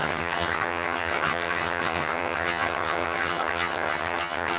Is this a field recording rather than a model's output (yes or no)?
no